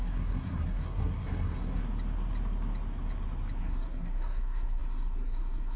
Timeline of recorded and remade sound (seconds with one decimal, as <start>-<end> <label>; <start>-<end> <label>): 0.0-1.8 remade; 1.8-3.6 recorded; 3.6-5.8 remade